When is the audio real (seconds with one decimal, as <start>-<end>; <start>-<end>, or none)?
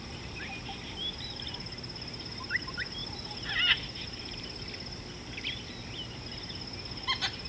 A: 0.0-7.5